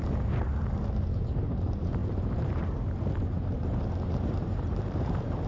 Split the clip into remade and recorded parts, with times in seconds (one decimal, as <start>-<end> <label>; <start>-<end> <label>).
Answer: 0.0-5.5 remade